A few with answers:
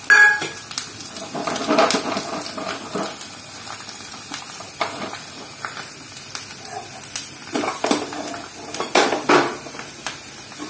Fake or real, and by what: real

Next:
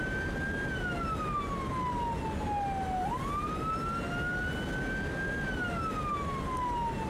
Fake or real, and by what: real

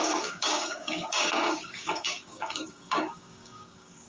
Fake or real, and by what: fake, codec, DAC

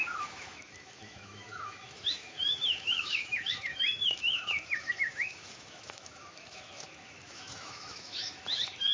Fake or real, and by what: fake, autoencoder, DAC-VAE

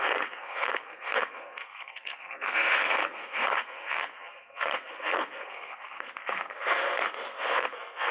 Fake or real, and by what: fake, codec, SNAC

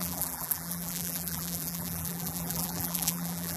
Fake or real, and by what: fake, vocoder, BigVGAN v2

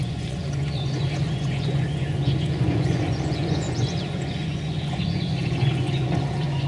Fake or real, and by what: fake, vocoder, Vocos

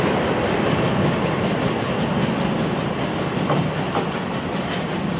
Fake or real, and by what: real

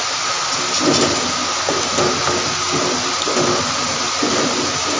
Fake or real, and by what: real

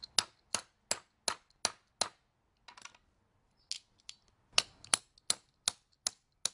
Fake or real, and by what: real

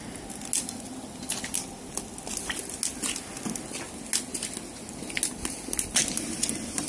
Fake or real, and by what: real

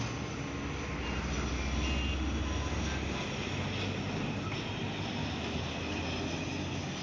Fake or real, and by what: real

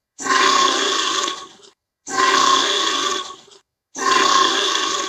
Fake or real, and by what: fake, codec, SNAC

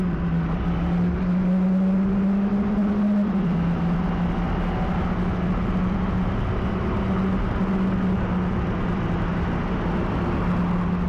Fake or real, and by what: real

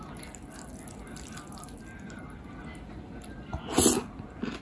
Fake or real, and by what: real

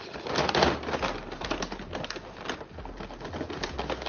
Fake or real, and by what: real